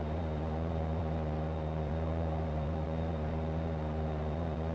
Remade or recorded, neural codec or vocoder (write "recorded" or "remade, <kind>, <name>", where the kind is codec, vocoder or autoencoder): remade, vocoder, Vocos